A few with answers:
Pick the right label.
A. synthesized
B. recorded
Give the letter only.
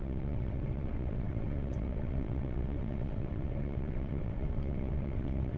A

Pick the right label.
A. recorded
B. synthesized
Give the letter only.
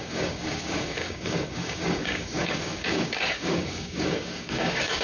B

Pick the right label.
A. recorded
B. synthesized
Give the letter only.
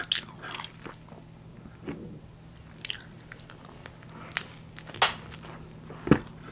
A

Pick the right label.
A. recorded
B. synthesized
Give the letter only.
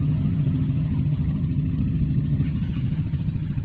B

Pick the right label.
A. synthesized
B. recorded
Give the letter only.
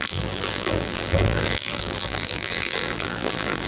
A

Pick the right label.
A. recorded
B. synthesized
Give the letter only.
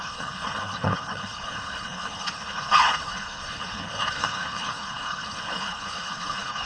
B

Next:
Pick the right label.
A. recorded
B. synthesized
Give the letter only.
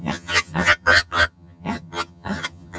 B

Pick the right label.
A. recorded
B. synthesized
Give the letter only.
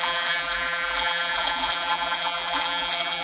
B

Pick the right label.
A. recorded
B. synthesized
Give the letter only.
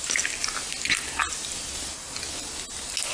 A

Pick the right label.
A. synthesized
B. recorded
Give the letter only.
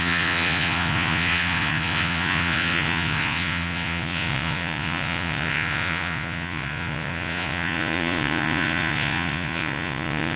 A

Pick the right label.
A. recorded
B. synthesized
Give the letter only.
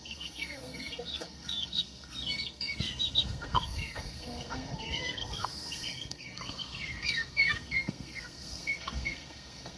B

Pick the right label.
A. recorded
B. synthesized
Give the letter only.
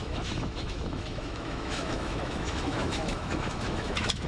B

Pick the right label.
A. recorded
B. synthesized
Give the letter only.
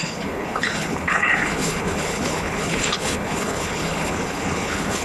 B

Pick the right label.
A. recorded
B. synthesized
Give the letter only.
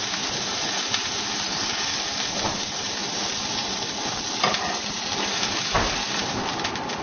A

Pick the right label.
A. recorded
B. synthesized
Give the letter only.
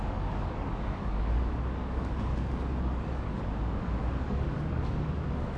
B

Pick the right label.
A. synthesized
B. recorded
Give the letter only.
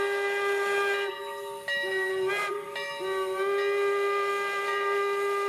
B